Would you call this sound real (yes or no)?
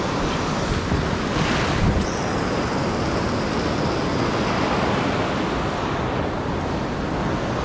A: yes